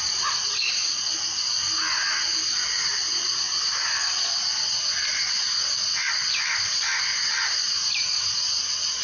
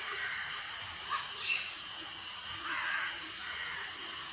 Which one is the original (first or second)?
first